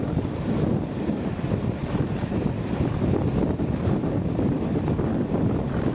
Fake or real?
real